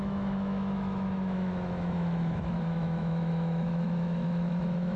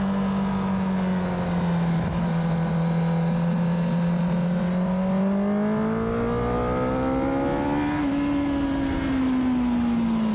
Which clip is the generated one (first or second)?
first